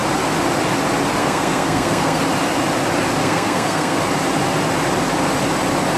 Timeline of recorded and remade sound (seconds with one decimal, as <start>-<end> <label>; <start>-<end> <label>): 0.0-1.2 recorded; 1.2-2.2 remade; 2.2-3.2 recorded; 3.2-4.0 remade; 4.0-6.0 recorded